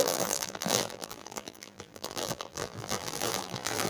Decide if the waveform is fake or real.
fake